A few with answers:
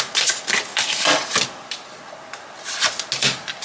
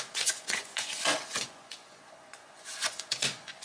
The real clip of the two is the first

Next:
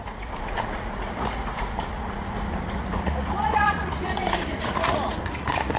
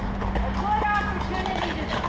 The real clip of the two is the second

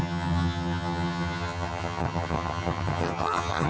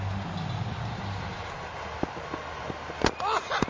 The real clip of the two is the second